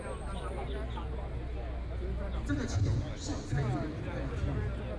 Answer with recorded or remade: recorded